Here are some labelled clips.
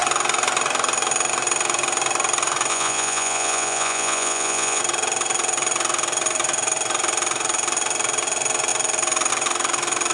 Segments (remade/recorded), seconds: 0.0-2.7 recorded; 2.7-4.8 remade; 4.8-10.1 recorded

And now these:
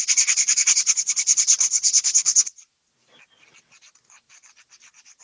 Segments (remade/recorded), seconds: 0.0-5.2 recorded

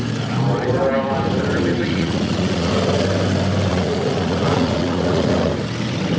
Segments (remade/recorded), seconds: 0.0-1.8 recorded; 1.8-2.7 remade; 2.7-3.7 recorded; 3.7-5.5 remade; 5.5-6.2 recorded

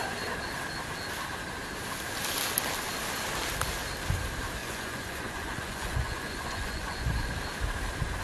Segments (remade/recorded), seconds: 0.0-4.6 recorded; 4.6-7.3 remade; 7.3-8.2 recorded

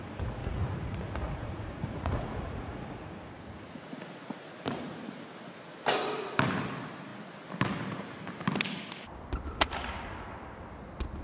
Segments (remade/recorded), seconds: 0.0-0.4 recorded; 0.4-5.2 remade; 5.2-11.2 recorded